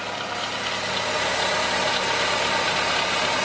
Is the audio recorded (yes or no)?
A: yes